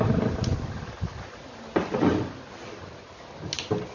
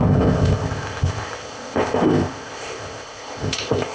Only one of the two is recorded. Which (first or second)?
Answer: first